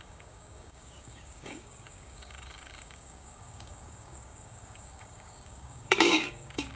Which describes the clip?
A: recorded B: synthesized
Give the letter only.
B